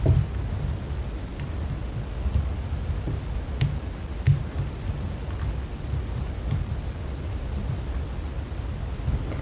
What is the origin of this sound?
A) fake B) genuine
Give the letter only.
B